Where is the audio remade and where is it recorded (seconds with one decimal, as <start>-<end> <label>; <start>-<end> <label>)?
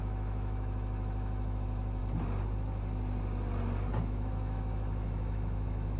0.0-2.0 remade; 2.0-4.0 recorded; 4.0-6.0 remade